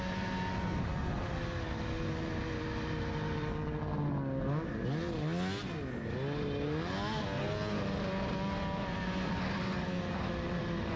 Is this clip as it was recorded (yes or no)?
yes